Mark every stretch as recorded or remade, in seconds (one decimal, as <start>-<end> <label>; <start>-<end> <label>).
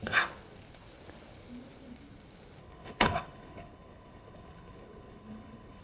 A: 0.0-2.6 recorded; 2.6-5.8 remade